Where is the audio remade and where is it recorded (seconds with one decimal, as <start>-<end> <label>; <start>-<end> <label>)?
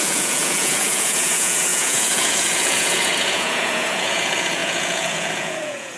0.0-6.0 remade